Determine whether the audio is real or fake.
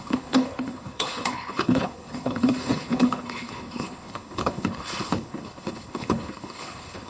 fake